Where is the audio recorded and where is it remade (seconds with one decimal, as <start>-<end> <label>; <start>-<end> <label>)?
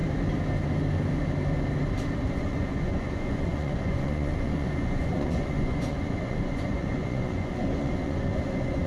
0.0-2.3 recorded; 2.3-8.9 remade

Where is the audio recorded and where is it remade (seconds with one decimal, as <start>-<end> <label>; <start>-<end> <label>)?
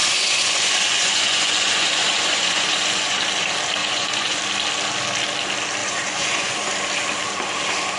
0.0-3.2 remade; 3.2-3.8 recorded; 3.8-4.4 remade; 4.4-5.8 recorded; 5.8-6.7 remade; 6.7-8.0 recorded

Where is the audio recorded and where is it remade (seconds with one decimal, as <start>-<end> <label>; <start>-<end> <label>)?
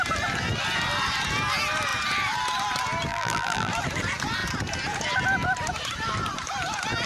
0.0-3.1 recorded; 3.1-3.7 remade; 3.7-7.1 recorded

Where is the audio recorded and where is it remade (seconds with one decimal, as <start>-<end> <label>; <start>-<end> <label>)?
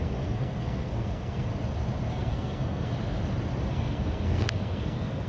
0.0-1.5 remade; 1.5-2.1 recorded; 2.1-2.9 remade; 2.9-3.7 recorded; 3.7-5.3 remade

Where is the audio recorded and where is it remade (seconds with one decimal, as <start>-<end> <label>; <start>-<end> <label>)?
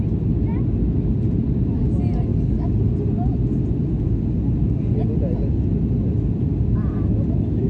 0.0-7.7 recorded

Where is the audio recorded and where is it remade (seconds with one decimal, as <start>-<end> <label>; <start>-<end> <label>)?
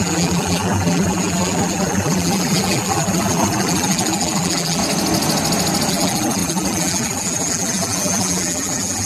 0.0-4.8 remade; 4.8-5.9 recorded; 5.9-9.1 remade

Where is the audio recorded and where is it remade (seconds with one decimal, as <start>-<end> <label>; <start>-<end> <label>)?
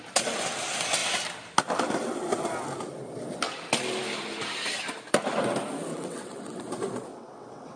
0.0-5.9 recorded; 5.9-6.6 remade; 6.6-7.1 recorded; 7.1-7.8 remade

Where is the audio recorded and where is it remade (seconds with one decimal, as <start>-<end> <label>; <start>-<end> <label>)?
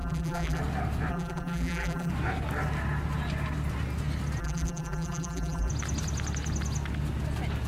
0.0-0.6 remade; 0.6-1.1 recorded; 1.1-2.1 remade; 2.1-4.4 recorded; 4.4-5.7 remade; 5.7-7.7 recorded